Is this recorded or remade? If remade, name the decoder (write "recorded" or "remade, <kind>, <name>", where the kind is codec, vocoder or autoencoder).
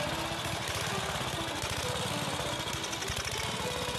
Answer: recorded